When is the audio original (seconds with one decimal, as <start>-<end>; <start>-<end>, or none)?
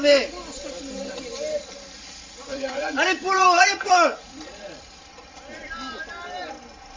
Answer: 0.0-2.5; 5.0-7.0